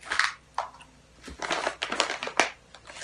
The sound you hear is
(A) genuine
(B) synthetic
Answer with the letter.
A